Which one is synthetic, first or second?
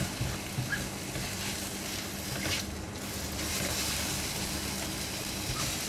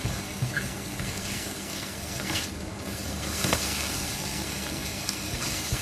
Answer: second